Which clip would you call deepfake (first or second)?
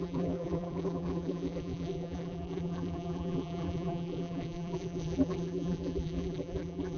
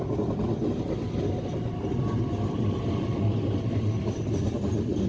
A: first